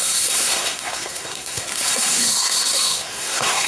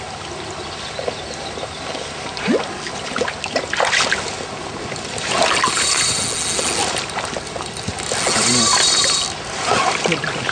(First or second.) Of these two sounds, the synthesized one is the first